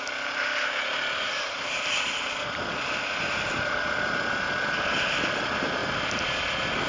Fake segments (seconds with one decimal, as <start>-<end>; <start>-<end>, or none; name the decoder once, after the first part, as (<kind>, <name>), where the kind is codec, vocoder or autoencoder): none